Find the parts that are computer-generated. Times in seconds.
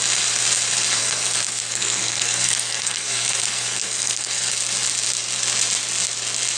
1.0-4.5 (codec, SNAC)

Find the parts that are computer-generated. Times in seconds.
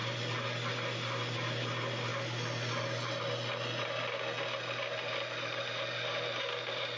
none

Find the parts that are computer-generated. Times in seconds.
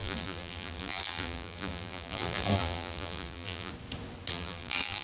0.0-3.7 (vocoder, BigVGAN v2); 4.3-5.0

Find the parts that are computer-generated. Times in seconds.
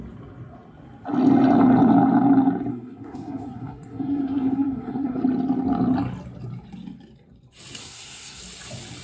2.7-5.2 (codec, SNAC); 7.8-8.4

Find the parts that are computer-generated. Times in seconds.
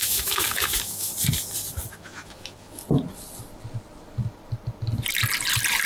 0.0-1.1 (autoencoder, DAC-VAE); 1.9-2.8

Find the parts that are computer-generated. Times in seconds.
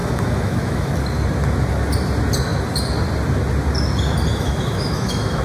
0.0-0.9 (autoencoder, DAC-VAE); 4.3-5.4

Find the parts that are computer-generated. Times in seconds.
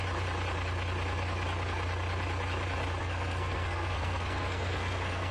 3.0-5.3 (codec, SNAC)